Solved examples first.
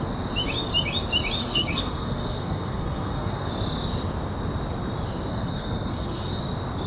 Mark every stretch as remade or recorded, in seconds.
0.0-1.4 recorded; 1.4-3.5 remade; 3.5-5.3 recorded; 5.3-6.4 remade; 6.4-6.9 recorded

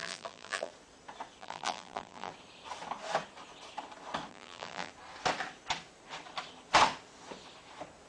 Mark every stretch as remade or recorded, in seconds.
0.0-0.7 remade; 0.7-1.4 recorded; 1.4-2.3 remade; 2.3-4.3 recorded; 4.3-4.9 remade; 4.9-8.1 recorded

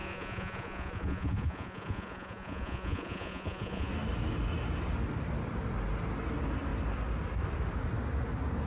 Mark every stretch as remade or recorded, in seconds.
0.0-3.9 remade; 3.9-8.7 recorded

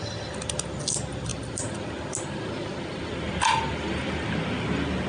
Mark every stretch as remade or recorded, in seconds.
0.0-5.1 recorded

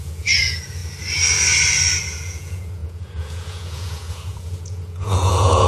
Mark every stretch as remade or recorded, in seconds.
0.0-0.8 remade; 0.8-2.0 recorded; 2.0-5.7 remade

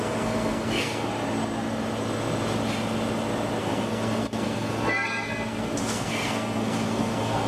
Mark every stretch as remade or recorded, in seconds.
0.0-1.1 remade; 1.1-3.6 recorded; 3.6-7.5 remade